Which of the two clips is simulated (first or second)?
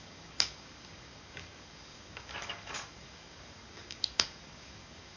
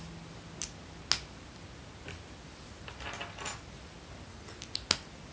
first